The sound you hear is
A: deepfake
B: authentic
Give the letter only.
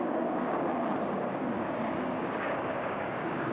A